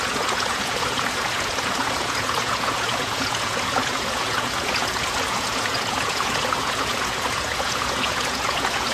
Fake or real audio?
fake